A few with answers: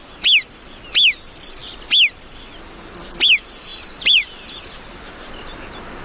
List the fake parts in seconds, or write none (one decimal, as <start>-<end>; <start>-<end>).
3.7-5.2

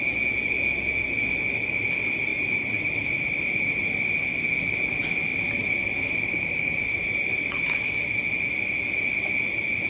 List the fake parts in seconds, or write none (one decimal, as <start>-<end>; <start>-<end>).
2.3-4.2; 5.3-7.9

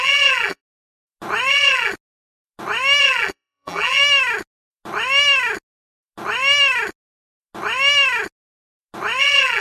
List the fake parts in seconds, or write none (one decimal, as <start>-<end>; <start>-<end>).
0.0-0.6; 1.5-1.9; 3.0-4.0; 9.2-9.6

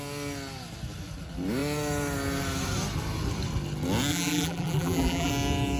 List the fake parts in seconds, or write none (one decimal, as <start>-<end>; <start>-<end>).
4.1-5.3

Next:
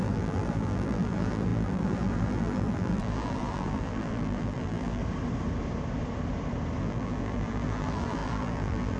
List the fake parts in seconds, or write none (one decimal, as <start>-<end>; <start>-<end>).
0.0-5.0; 6.8-9.0